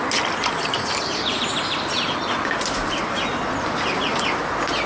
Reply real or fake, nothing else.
real